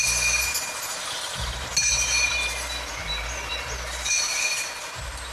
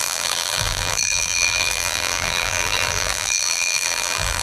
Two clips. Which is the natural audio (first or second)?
first